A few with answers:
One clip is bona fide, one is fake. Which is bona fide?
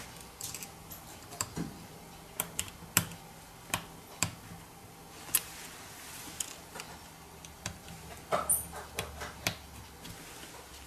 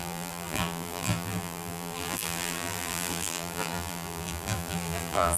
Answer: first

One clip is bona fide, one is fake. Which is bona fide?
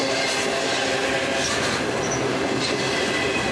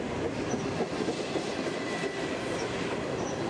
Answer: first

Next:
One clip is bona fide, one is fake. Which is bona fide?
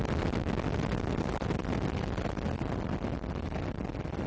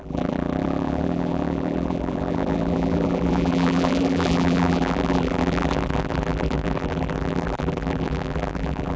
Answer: first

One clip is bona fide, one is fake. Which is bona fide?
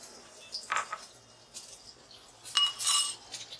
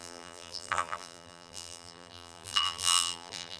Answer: first